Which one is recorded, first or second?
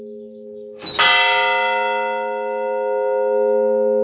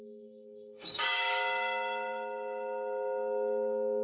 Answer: first